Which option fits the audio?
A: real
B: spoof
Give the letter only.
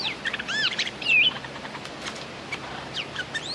B